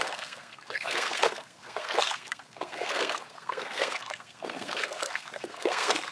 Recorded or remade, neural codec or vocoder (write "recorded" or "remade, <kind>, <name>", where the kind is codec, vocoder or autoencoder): remade, codec, SNAC